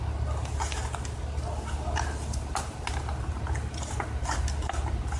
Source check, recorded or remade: recorded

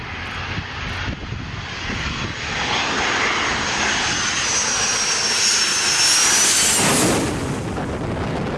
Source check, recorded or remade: recorded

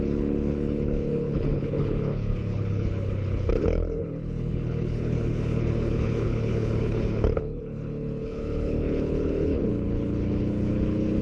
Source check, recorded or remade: remade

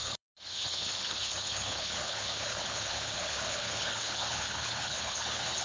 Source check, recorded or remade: remade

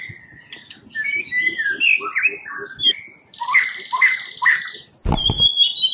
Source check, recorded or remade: recorded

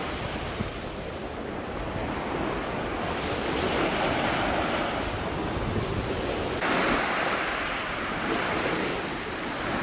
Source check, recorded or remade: recorded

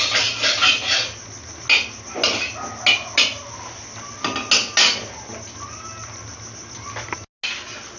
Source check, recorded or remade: recorded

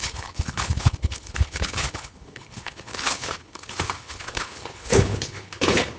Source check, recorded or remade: remade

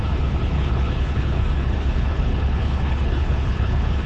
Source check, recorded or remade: remade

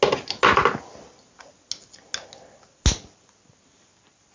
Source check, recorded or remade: recorded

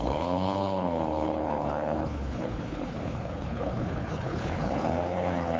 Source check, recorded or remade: remade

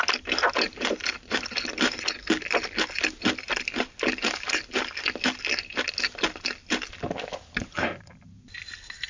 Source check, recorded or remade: recorded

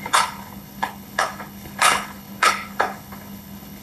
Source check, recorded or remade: remade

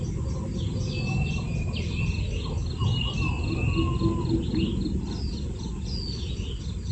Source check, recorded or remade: recorded